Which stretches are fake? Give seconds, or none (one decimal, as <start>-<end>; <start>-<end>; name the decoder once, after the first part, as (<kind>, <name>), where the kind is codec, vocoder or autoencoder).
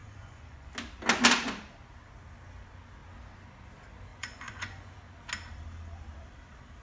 0.0-0.7 (vocoder, Vocos); 4.1-4.9